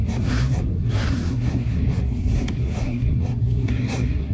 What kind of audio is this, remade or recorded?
remade